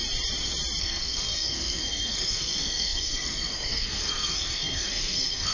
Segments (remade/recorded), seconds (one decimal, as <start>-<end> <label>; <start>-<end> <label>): 0.0-0.8 recorded; 0.8-5.5 remade